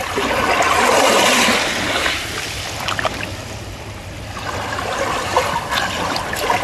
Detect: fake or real real